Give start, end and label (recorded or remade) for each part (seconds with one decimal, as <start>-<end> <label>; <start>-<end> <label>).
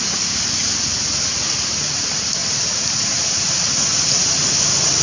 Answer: 0.0-2.4 recorded; 2.4-3.4 remade; 3.4-3.9 recorded; 3.9-4.6 remade; 4.6-5.0 recorded